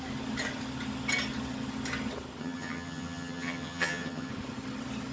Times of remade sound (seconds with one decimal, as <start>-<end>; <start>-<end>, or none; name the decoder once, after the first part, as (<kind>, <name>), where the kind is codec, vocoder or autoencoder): 2.4-4.3 (vocoder, HiFi-GAN)